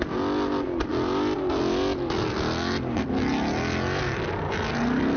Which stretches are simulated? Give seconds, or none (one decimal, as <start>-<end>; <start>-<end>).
none